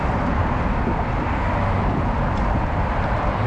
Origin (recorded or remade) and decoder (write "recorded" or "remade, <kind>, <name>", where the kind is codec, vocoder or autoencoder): recorded